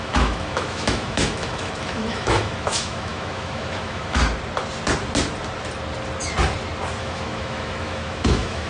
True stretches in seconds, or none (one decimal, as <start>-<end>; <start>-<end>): 4.2-7.0